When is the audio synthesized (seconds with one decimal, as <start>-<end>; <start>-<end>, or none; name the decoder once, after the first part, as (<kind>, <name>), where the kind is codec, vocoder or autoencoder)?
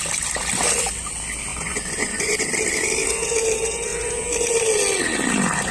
1.5-2.4 (vocoder, Vocos)